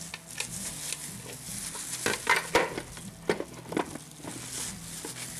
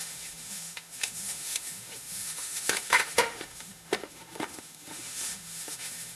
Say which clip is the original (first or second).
first